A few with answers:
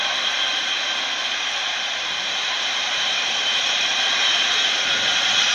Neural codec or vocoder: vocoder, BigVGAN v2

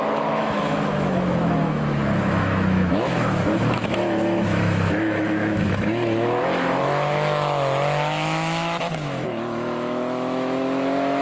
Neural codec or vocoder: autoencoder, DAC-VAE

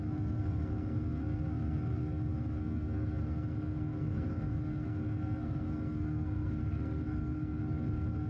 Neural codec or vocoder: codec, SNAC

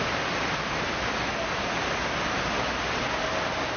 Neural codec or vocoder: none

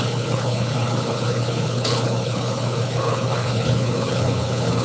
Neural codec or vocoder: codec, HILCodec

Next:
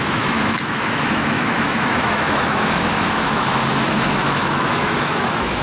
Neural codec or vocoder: autoencoder, DAC-VAE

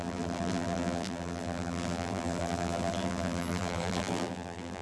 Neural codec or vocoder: vocoder, BigVGAN v2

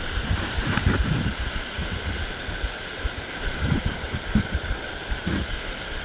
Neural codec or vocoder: none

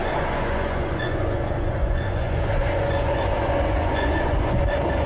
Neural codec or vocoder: vocoder, Vocos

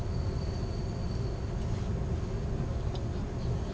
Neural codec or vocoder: none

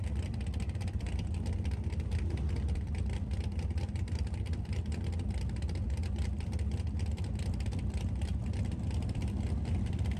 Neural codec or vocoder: vocoder, BigVGAN v2